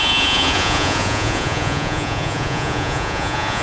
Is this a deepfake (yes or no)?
yes